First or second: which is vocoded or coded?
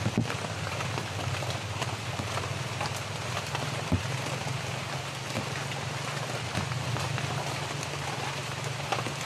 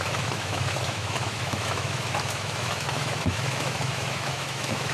second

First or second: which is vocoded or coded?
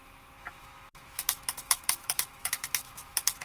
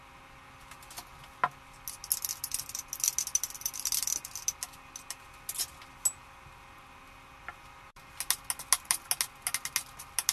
first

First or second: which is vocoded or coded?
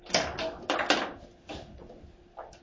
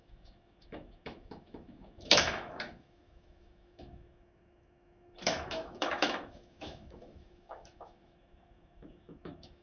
second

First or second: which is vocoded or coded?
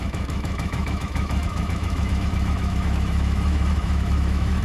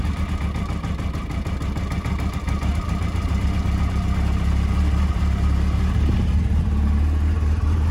first